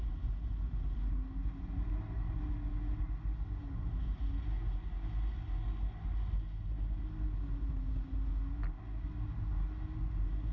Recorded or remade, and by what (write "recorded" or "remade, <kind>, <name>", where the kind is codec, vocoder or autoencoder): recorded